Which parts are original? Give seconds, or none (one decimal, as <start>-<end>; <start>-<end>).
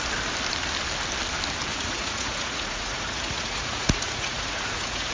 0.0-1.7